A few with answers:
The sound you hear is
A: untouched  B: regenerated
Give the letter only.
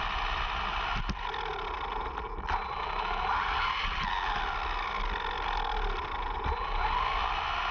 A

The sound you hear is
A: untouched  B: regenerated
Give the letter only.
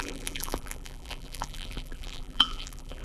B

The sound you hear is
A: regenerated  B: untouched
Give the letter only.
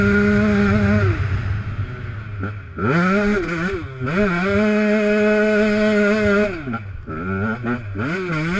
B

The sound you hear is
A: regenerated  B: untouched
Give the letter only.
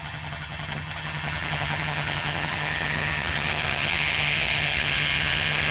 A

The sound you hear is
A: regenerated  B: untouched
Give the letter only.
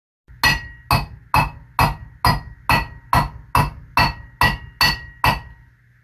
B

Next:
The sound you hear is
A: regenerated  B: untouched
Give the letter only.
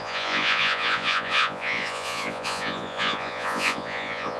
A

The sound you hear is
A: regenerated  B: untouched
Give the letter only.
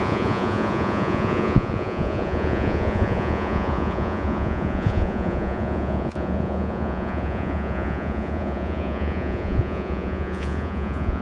A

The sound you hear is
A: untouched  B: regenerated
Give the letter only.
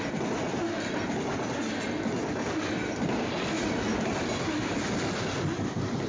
A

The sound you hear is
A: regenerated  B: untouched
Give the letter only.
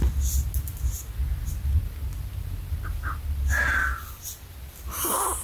B